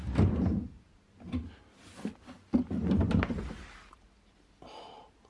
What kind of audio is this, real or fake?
real